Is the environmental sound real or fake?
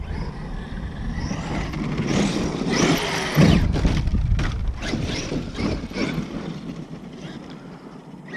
real